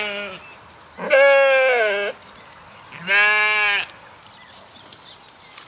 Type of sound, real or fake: real